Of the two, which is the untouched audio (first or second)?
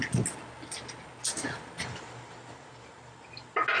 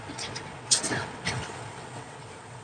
first